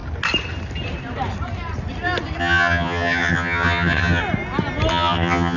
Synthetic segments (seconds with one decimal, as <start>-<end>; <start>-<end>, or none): 2.4-4.2; 4.9-5.6